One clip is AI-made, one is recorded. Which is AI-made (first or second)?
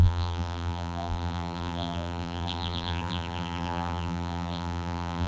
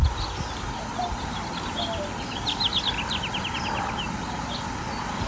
first